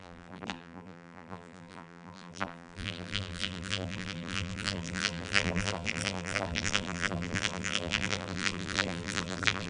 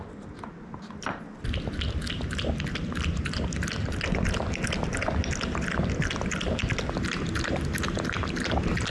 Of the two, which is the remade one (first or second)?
first